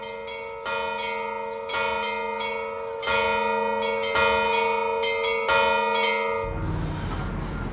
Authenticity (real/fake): real